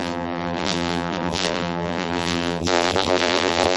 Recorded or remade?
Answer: remade